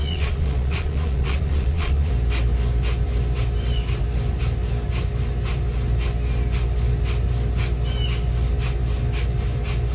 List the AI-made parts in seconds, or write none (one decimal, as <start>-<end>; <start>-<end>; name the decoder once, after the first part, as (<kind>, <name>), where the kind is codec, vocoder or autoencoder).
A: 0.0-2.1 (vocoder, Vocos)